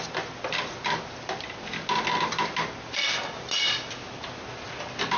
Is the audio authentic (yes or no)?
yes